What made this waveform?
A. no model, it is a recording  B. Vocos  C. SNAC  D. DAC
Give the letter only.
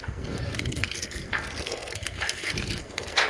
C